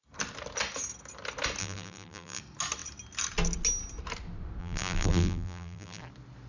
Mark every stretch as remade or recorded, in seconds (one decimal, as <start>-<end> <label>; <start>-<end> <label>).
0.0-1.6 recorded; 1.6-2.4 remade; 2.4-4.6 recorded; 4.6-6.0 remade; 6.0-6.5 recorded

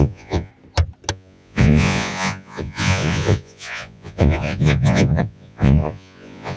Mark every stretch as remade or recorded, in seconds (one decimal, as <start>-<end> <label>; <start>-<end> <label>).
0.0-0.5 remade; 0.5-1.1 recorded; 1.1-6.6 remade

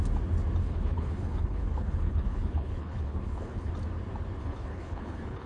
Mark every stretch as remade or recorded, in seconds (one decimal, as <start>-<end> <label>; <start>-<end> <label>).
0.0-0.6 recorded; 0.6-3.7 remade; 3.7-4.4 recorded; 4.4-5.5 remade

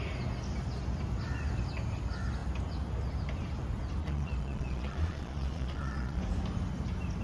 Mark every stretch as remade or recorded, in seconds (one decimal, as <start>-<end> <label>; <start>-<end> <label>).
0.0-4.0 recorded; 4.0-6.2 remade; 6.2-7.2 recorded

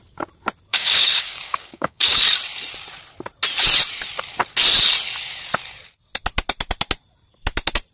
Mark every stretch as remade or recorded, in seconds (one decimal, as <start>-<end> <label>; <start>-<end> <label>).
0.0-0.7 recorded; 0.7-2.3 remade; 2.3-7.9 recorded

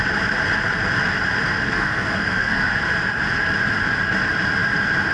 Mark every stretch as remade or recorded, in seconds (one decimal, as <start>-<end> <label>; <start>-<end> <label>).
0.0-1.6 recorded; 1.6-2.8 remade; 2.8-5.1 recorded

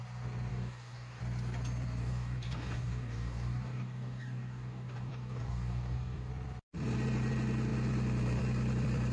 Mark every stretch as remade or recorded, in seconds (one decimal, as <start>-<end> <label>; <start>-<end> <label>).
0.0-0.5 recorded; 0.5-1.2 remade; 1.2-2.0 recorded; 2.0-6.3 remade; 6.3-9.1 recorded

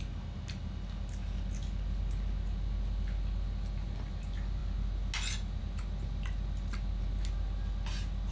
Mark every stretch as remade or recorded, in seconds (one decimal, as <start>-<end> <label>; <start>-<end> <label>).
0.0-8.3 recorded